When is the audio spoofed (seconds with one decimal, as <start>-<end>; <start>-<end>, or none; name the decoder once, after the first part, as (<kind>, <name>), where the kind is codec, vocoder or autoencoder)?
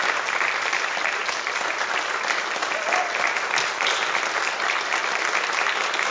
none